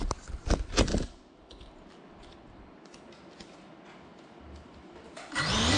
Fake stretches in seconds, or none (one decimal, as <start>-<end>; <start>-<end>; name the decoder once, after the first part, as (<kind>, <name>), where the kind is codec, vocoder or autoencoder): 0.0-0.9 (vocoder, BigVGAN v2); 4.4-5.8